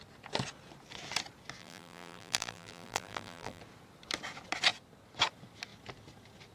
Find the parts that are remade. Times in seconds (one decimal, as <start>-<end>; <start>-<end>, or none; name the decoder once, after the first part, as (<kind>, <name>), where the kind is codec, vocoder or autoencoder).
1.6-3.6 (vocoder, BigVGAN v2)